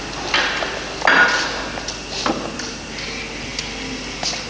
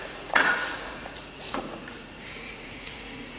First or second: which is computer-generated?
second